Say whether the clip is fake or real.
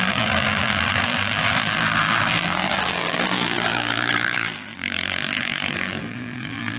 fake